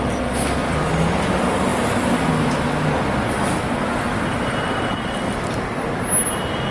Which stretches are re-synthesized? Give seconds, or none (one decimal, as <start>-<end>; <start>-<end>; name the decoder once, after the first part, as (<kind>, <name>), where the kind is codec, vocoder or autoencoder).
none